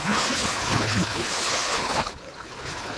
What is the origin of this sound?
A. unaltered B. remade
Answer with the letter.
B